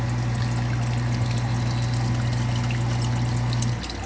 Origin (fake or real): real